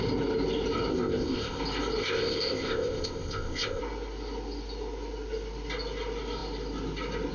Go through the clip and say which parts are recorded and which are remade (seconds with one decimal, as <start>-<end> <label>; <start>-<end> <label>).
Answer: 0.0-0.9 recorded; 0.9-1.6 remade; 1.6-2.0 recorded; 2.0-3.8 remade; 3.8-7.3 recorded